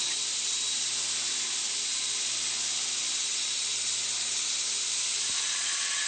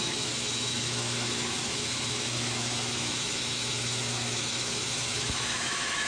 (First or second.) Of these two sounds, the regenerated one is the second